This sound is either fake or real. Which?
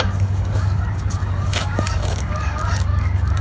fake